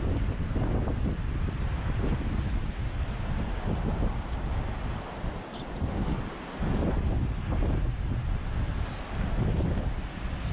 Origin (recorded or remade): recorded